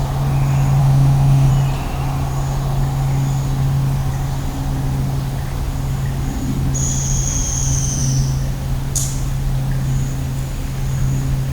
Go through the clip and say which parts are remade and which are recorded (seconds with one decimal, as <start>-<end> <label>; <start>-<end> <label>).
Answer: 0.0-0.8 recorded; 0.8-1.5 remade; 1.5-11.5 recorded